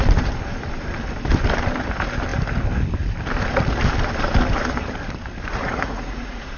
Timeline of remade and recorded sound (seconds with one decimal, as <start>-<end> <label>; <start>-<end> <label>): 0.0-5.5 recorded; 5.5-6.6 remade